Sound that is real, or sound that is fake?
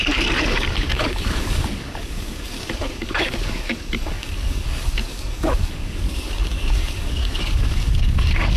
fake